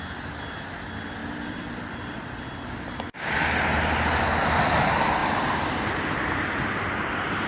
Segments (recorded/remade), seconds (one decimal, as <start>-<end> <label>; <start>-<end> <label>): 0.0-1.2 recorded; 1.2-2.3 remade; 2.3-5.2 recorded; 5.2-6.3 remade; 6.3-7.5 recorded